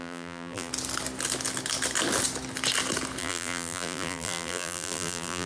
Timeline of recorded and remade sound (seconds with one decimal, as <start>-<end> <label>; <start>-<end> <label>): 0.0-0.7 remade; 0.7-3.2 recorded; 3.2-5.5 remade